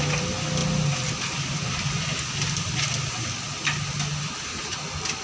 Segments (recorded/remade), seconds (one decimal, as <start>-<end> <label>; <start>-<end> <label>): 0.0-5.2 recorded